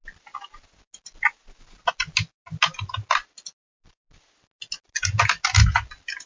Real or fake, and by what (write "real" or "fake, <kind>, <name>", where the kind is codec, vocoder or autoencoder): real